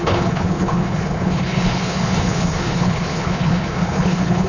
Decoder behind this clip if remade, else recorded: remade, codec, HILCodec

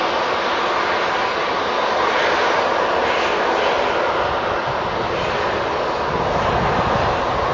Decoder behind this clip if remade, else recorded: recorded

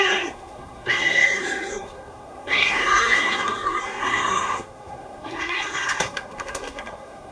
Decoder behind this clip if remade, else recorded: remade, codec, SNAC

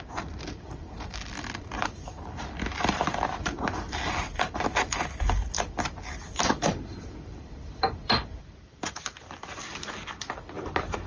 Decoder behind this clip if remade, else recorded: remade, vocoder, BigVGAN v2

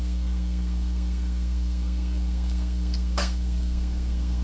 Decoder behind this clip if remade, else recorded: remade, codec, SNAC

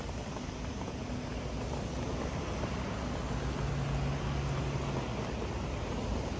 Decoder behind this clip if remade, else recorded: recorded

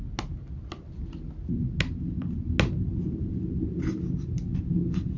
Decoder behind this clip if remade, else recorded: recorded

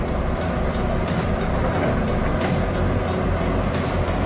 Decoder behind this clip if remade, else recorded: recorded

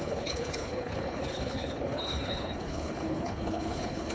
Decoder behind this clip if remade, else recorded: remade, codec, HILCodec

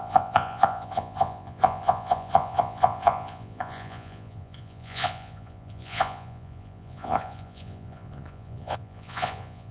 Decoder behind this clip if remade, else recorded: remade, vocoder, Vocos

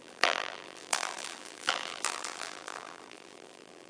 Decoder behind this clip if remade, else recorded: remade, vocoder, BigVGAN v2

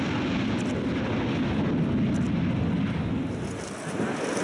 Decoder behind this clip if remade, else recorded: recorded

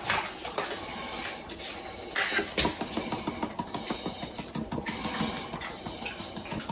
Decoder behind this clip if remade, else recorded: recorded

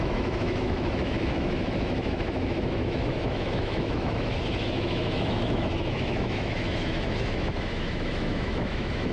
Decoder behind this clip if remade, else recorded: remade, autoencoder, DAC-VAE